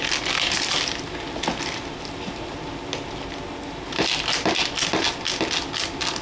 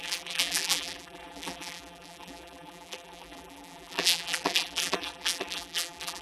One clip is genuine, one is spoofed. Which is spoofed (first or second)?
second